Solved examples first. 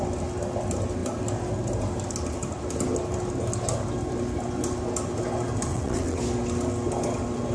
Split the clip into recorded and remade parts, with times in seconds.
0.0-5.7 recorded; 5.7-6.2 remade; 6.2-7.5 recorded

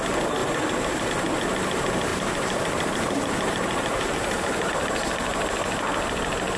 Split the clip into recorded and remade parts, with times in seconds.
0.0-0.4 recorded; 0.4-1.1 remade; 1.1-2.1 recorded; 2.1-4.7 remade; 4.7-6.6 recorded

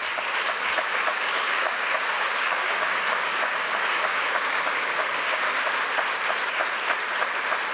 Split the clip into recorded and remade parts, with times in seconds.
0.0-1.1 recorded; 1.1-5.7 remade; 5.7-7.7 recorded

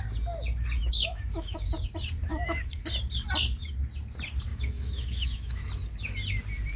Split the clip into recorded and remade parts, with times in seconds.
0.0-0.8 recorded; 0.8-1.7 remade; 1.7-2.3 recorded; 2.3-2.8 remade; 2.8-4.5 recorded; 4.5-5.7 remade; 5.7-6.8 recorded

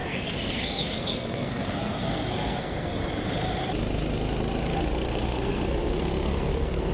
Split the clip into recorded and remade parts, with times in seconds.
0.0-3.1 remade; 3.1-4.7 recorded; 4.7-6.9 remade

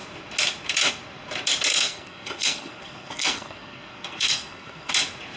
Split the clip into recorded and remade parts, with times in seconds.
0.0-1.7 recorded; 1.7-4.9 remade; 4.9-5.4 recorded